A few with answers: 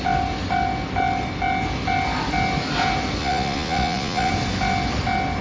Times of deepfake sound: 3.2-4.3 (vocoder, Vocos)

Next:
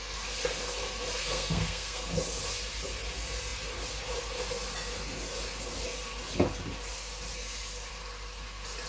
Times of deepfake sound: 1.2-2.1 (codec, SNAC)